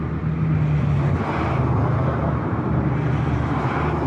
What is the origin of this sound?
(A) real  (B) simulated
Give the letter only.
A